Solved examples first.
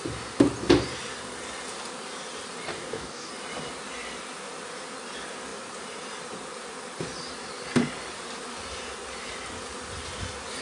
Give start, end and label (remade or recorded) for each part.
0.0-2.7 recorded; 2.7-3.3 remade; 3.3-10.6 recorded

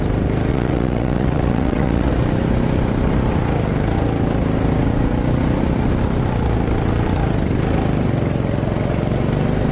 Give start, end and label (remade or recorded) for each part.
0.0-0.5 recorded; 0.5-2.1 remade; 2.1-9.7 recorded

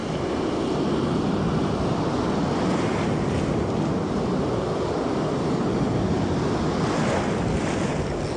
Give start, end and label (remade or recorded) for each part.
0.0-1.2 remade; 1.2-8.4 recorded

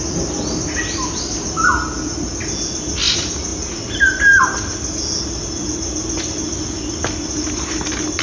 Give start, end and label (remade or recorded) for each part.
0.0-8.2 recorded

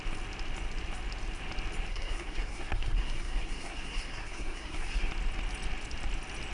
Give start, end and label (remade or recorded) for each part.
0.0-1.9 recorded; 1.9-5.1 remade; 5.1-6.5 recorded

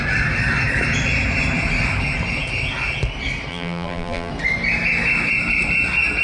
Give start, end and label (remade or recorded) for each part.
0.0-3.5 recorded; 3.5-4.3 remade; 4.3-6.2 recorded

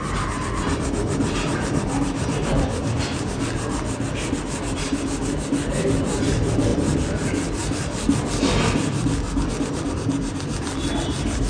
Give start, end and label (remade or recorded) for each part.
0.0-11.5 recorded